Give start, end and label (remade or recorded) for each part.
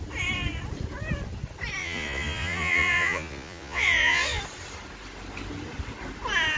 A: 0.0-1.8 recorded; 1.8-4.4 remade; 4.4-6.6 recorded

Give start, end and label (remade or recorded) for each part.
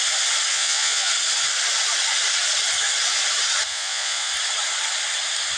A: 0.0-0.5 recorded; 0.5-1.1 remade; 1.1-3.7 recorded; 3.7-4.3 remade; 4.3-5.6 recorded